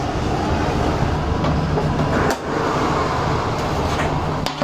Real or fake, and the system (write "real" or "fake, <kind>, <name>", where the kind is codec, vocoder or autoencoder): real